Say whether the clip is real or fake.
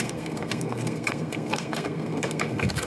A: fake